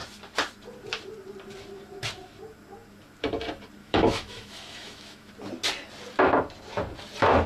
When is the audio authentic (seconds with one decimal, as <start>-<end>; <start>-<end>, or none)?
0.0-3.8; 5.3-7.5